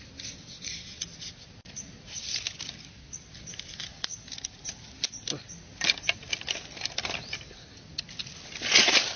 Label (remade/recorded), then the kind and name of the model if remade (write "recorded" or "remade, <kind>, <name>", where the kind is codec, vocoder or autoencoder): recorded